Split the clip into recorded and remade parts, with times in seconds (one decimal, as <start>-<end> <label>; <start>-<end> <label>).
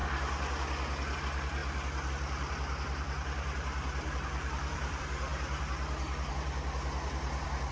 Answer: 0.0-1.2 recorded; 1.2-1.6 remade; 1.6-2.1 recorded; 2.1-7.7 remade